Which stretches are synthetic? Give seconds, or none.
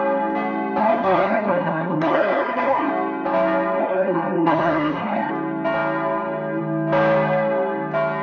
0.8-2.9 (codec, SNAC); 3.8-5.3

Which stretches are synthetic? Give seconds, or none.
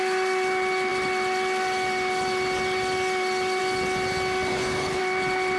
4.5-5.0 (codec, HILCodec)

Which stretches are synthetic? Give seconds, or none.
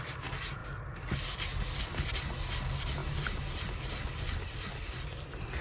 none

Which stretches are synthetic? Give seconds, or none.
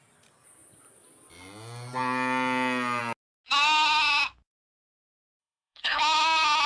5.4-6.0 (codec, HILCodec)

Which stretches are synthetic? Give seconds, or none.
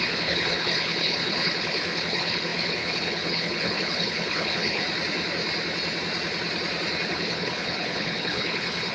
0.0-4.8 (codec, HILCodec); 7.1-8.9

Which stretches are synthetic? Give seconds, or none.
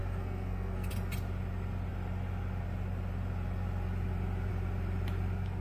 0.0-0.9 (codec, SNAC)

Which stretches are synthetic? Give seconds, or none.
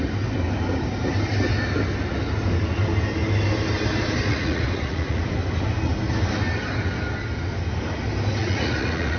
4.3-5.2 (vocoder, Vocos); 8.4-9.2